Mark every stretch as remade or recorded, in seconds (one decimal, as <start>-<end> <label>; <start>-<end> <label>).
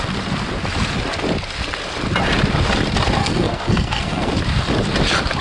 0.0-3.2 recorded; 3.2-4.3 remade; 4.3-5.4 recorded